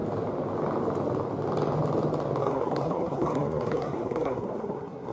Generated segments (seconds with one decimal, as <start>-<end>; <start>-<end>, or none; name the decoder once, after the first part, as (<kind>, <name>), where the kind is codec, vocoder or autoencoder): 2.4-5.1 (codec, SNAC)